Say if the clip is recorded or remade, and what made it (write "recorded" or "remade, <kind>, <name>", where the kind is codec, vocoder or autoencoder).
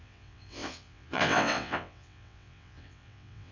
remade, vocoder, WaveNeXt